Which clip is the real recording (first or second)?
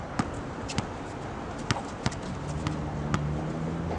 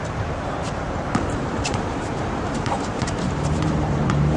first